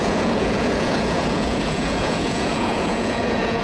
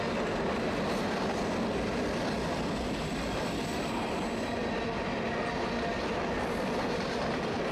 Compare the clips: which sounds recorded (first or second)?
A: second